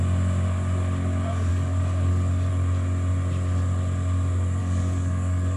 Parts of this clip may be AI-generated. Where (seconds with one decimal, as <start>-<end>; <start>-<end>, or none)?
1.5-2.5; 4.6-5.6